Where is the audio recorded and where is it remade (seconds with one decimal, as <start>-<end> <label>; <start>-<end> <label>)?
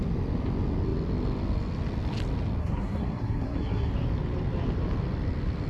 0.0-2.6 recorded; 2.6-3.9 remade; 3.9-5.7 recorded